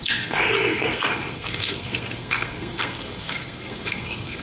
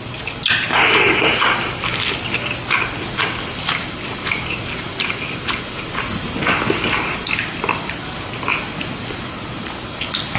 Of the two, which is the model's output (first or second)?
first